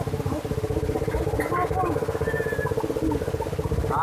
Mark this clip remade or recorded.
recorded